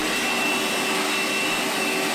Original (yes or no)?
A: yes